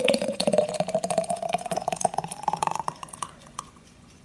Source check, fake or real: fake